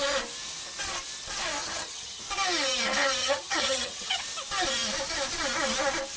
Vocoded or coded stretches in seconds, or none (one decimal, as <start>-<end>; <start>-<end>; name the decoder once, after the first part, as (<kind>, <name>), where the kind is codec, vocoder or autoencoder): 1.6-2.2 (vocoder, HiFi-GAN); 3.2-4.2